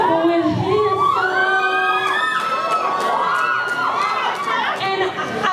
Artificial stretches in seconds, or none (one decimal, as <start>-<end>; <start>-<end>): none